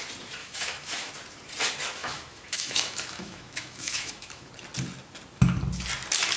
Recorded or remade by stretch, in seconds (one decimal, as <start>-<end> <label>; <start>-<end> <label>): 0.0-0.4 recorded; 0.4-1.1 remade; 1.1-2.0 recorded; 2.0-4.5 remade; 4.5-6.4 recorded